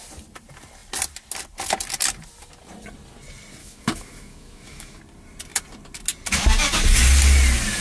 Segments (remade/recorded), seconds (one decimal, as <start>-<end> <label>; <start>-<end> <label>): 0.0-3.6 recorded; 3.6-5.0 remade; 5.0-7.8 recorded